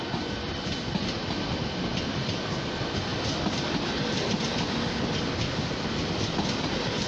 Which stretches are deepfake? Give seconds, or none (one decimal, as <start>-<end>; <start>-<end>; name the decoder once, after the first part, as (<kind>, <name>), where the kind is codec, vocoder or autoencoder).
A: none